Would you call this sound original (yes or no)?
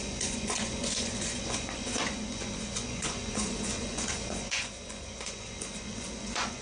no